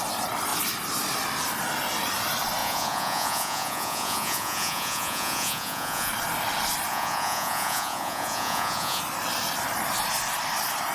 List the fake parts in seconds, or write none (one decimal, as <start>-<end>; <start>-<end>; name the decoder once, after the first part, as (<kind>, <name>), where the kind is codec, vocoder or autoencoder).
2.6-6.1 (vocoder, Vocos); 6.9-9.0